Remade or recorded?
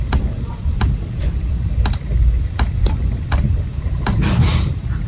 remade